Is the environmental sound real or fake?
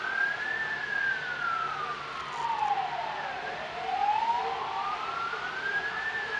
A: real